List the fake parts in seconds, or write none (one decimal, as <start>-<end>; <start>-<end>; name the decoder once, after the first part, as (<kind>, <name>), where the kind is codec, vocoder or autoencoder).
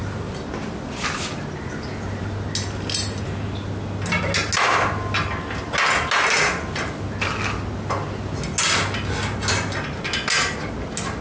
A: none